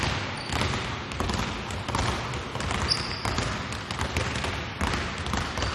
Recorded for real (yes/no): yes